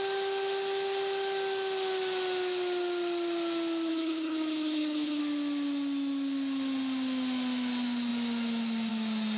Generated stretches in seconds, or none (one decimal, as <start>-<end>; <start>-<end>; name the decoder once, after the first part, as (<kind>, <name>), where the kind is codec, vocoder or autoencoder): 3.9-5.2 (codec, HILCodec)